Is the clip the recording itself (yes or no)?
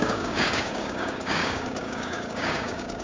no